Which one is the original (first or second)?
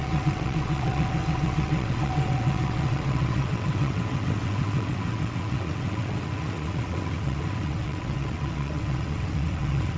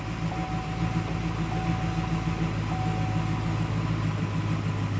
second